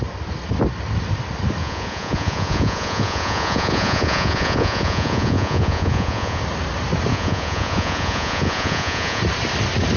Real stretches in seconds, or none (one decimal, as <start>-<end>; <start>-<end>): 0.0-1.6; 6.4-7.1; 9.2-10.0